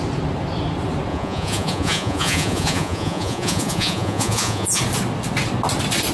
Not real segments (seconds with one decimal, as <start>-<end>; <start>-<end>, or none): 1.1-4.8